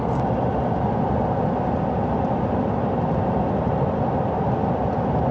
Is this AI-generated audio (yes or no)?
no